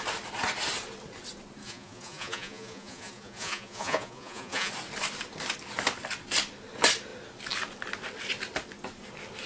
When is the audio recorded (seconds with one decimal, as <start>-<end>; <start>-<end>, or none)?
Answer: 0.0-1.6; 4.7-9.5